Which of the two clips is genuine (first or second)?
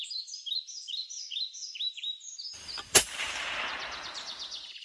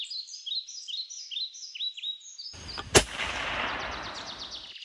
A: second